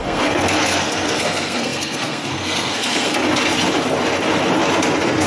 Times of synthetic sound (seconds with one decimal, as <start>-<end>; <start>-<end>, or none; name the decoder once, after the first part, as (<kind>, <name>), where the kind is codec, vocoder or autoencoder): 0.0-3.2 (codec, SNAC)